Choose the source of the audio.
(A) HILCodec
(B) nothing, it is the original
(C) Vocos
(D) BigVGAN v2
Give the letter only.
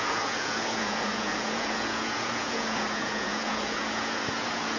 C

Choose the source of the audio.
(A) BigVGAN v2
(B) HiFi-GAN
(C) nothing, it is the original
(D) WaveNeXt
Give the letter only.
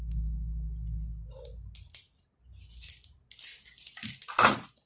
C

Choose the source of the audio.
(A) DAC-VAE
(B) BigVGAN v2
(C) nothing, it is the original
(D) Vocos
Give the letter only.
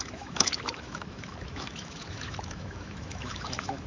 A